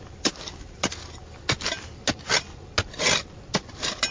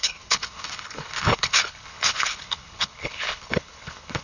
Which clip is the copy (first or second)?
second